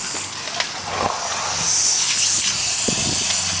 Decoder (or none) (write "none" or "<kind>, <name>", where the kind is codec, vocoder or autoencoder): none